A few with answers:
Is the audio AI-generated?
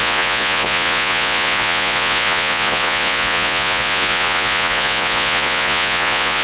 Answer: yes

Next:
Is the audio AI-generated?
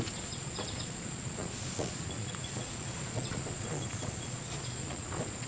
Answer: yes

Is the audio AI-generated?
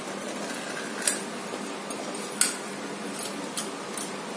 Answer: no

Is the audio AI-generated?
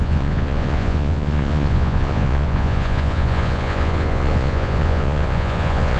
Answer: yes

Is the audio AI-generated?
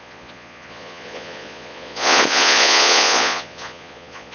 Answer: yes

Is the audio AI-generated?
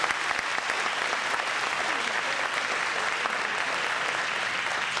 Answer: no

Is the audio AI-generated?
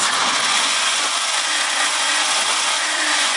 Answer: yes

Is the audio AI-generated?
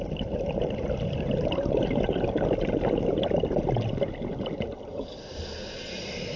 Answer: no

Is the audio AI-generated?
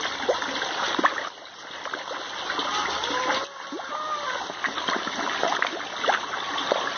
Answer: no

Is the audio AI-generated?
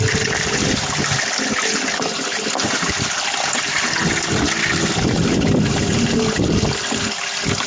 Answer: no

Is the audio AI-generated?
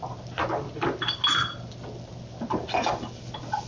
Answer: no